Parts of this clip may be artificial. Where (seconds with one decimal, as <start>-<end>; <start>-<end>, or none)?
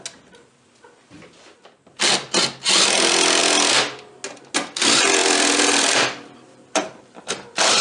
5.2-7.2